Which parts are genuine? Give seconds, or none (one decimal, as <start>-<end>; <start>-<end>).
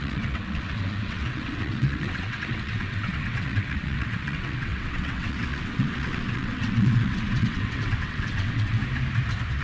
8.8-9.6